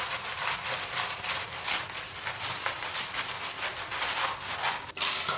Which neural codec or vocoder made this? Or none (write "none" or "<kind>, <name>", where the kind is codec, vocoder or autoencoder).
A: none